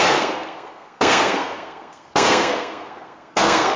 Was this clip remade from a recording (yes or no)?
yes